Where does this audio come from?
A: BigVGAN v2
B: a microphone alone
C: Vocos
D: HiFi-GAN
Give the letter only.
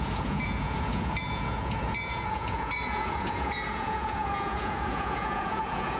C